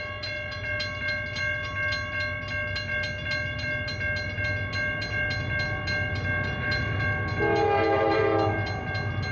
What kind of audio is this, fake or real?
real